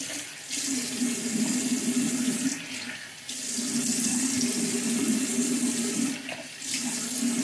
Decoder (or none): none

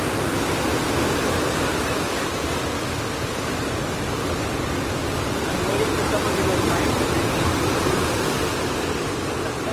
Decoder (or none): none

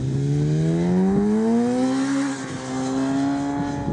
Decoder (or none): none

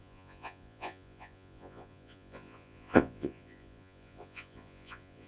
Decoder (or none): vocoder, Vocos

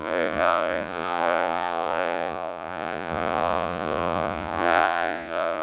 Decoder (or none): vocoder, Vocos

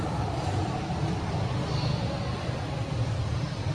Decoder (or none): none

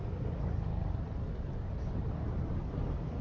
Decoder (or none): none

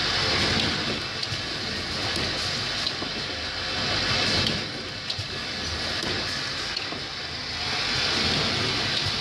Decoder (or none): none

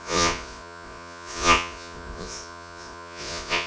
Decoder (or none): vocoder, Vocos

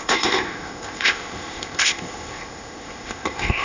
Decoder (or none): codec, ZipCodec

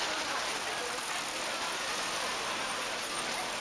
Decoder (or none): none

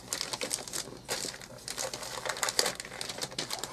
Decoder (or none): none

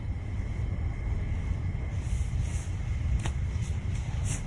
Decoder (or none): none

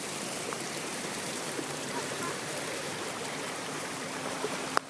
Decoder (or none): vocoder, BigVGAN v2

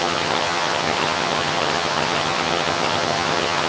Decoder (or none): vocoder, HiFi-GAN